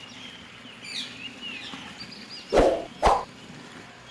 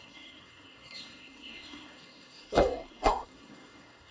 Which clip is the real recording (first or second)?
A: first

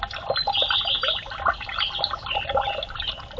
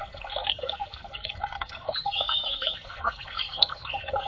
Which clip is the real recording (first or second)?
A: first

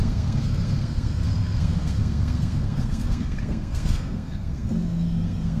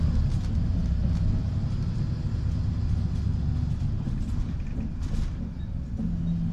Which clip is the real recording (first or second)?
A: second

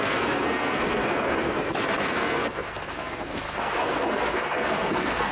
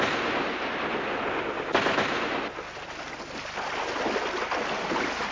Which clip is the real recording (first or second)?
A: second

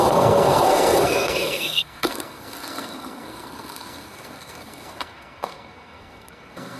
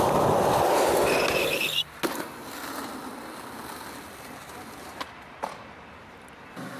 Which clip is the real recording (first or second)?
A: second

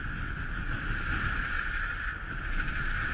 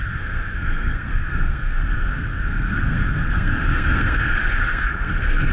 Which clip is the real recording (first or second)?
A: first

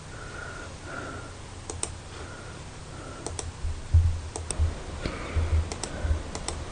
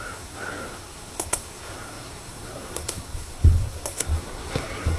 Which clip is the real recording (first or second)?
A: first